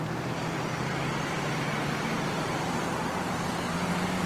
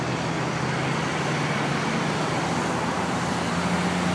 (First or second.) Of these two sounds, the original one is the second